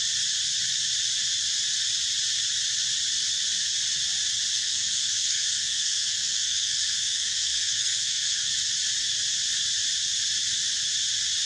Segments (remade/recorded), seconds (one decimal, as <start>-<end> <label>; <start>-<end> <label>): 0.0-4.5 recorded; 4.5-8.5 remade; 8.5-11.5 recorded